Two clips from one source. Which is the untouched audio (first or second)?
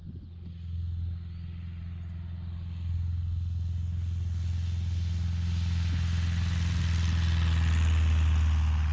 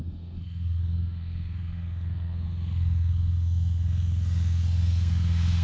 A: first